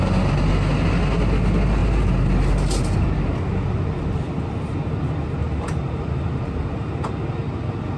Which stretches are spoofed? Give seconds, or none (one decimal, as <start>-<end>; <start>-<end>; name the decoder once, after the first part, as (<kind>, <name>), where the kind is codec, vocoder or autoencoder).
5.4-7.1 (vocoder, BigVGAN v2)